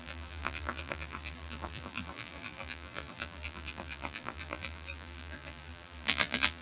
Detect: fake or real fake